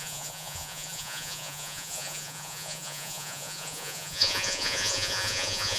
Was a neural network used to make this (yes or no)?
yes